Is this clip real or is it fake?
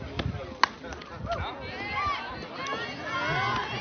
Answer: real